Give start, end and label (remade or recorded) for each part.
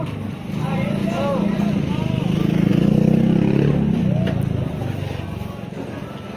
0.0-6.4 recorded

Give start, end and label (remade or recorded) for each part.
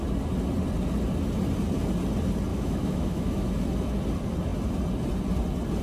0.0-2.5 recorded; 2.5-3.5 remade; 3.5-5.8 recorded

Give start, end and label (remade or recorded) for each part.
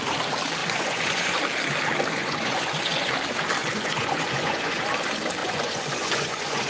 0.0-0.6 recorded; 0.6-1.4 remade; 1.4-2.1 recorded; 2.1-3.1 remade; 3.1-3.6 recorded; 3.6-4.8 remade; 4.8-5.4 recorded; 5.4-6.7 remade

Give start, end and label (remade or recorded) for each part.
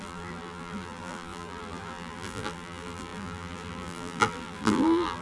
0.0-5.2 remade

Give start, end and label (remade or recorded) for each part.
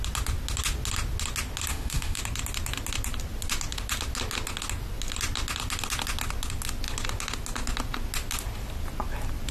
0.0-1.7 recorded; 1.7-2.2 remade; 2.2-9.5 recorded